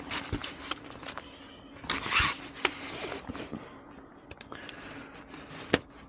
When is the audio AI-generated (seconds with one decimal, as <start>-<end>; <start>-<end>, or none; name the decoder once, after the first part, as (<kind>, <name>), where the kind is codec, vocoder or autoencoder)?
none